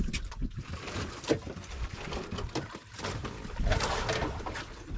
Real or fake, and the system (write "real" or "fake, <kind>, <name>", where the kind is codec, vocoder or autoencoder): real